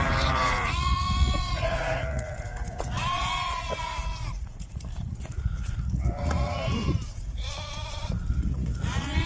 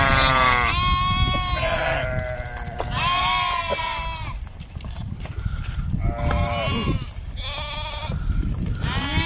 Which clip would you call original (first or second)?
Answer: second